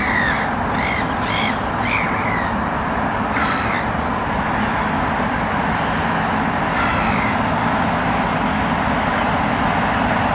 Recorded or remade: recorded